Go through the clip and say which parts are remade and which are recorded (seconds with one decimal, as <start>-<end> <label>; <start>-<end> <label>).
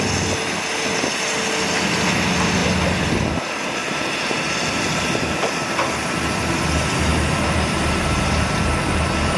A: 0.0-3.8 recorded; 3.8-5.7 remade; 5.7-7.1 recorded; 7.1-9.4 remade